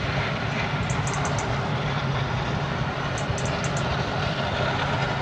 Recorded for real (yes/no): yes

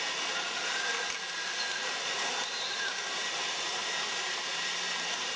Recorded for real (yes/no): yes